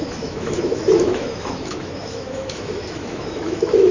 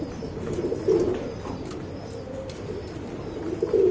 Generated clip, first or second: first